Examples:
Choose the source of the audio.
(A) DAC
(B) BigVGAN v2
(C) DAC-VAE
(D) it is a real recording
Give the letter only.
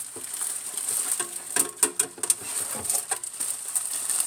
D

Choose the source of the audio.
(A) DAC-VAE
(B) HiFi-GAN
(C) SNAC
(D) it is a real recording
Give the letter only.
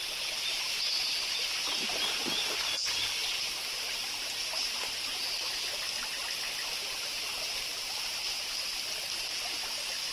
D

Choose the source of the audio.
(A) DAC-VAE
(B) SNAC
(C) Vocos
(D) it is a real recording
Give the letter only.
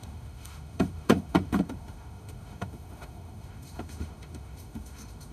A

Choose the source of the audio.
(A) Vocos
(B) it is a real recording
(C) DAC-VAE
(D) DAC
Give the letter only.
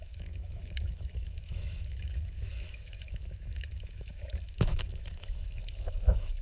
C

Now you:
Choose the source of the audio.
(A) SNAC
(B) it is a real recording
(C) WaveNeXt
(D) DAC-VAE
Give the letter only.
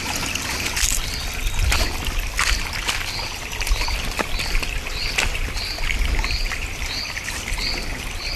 B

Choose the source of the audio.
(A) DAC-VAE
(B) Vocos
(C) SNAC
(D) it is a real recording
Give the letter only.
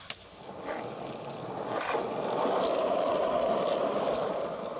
D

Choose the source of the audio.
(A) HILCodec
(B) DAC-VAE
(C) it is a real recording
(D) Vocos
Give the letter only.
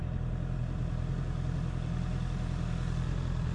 C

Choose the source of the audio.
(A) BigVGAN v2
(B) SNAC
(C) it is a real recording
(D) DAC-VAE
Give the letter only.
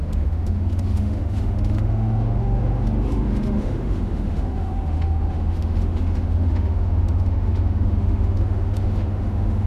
D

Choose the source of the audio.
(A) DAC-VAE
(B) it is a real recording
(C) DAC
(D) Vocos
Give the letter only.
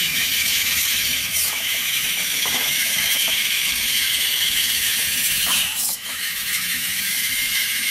A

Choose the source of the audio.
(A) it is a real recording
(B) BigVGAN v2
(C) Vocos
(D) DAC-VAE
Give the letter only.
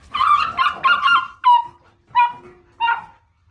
A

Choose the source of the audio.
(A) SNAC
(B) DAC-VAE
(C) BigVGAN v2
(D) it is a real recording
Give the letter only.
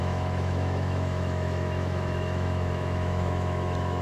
B